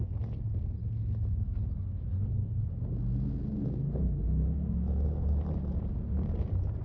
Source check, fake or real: real